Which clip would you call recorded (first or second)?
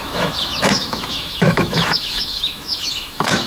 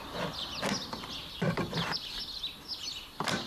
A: second